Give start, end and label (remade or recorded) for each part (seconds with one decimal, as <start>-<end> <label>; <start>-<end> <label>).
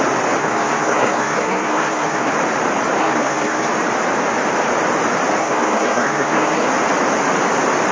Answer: 0.0-0.4 recorded; 0.4-2.3 remade; 2.3-3.0 recorded; 3.0-3.7 remade; 3.7-5.4 recorded; 5.4-6.7 remade; 6.7-7.9 recorded